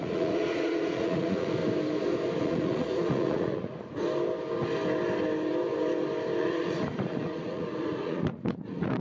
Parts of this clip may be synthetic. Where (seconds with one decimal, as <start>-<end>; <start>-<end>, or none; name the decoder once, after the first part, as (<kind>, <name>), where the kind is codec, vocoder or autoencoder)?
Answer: 0.0-1.6 (vocoder, Vocos); 2.4-4.0; 6.4-9.0